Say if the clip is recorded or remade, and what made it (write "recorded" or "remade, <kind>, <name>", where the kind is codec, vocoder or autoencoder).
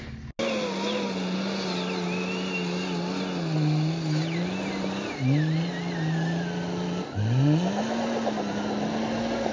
recorded